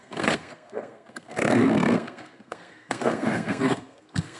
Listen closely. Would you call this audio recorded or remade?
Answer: remade